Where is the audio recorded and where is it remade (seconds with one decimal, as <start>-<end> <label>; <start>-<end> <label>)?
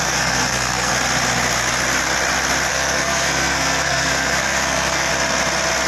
0.0-0.9 remade; 0.9-2.7 recorded; 2.7-5.1 remade; 5.1-5.9 recorded